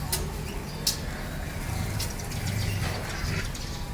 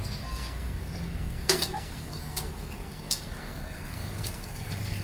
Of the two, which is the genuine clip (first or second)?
first